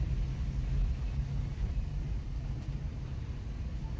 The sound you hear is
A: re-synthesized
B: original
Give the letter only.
B